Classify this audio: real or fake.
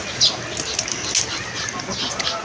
real